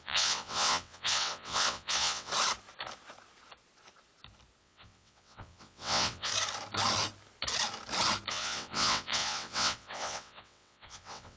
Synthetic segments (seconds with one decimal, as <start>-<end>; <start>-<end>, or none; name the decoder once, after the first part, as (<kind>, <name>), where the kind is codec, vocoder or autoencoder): 0.0-2.3 (vocoder, WaveNeXt); 4.6-6.3; 8.3-11.4